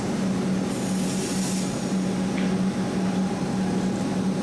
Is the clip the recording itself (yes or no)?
yes